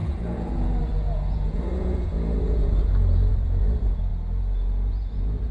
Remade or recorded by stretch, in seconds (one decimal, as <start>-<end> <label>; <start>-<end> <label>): 0.0-5.5 remade